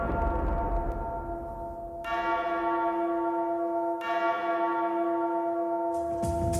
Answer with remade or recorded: recorded